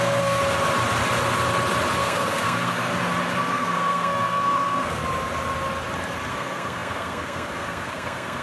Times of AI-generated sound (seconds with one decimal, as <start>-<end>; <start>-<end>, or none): 0.0-0.4; 2.0-2.9; 3.5-5.0; 6.3-8.4